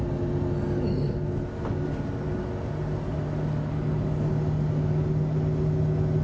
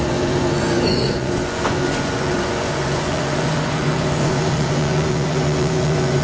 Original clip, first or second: first